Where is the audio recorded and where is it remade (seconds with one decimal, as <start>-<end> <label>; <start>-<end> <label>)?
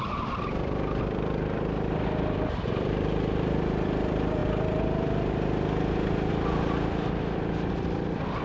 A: 0.0-4.4 remade; 4.4-6.3 recorded; 6.3-8.4 remade